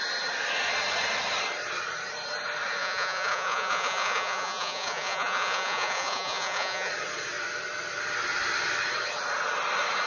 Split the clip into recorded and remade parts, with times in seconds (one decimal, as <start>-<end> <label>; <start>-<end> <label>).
0.0-2.8 recorded; 2.8-6.9 remade; 6.9-10.1 recorded